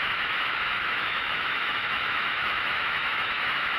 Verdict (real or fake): fake